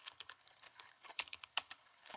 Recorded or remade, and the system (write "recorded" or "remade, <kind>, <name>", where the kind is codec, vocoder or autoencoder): remade, codec, HILCodec